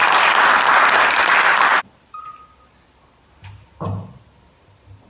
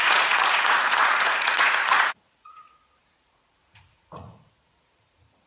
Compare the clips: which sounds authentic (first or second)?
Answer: first